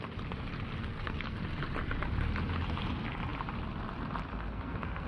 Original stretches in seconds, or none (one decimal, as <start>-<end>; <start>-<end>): 0.0-0.8; 1.4-4.3